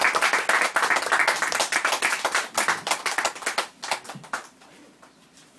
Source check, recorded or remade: recorded